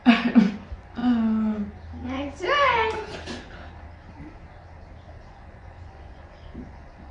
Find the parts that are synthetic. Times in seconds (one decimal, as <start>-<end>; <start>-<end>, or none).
0.0-1.0; 5.3-7.1